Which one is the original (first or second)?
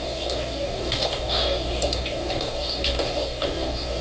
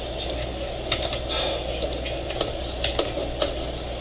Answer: second